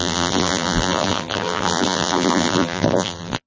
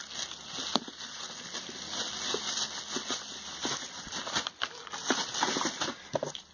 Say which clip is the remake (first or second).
first